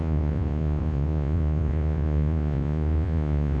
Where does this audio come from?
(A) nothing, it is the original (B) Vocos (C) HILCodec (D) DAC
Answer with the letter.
B